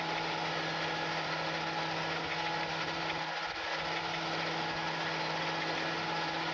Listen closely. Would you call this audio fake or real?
real